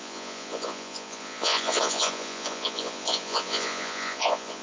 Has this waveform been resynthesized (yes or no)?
yes